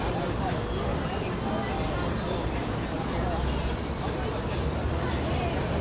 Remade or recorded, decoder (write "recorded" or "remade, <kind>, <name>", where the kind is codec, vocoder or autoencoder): recorded